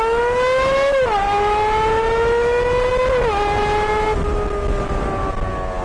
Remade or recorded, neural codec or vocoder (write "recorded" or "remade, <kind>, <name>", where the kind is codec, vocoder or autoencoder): recorded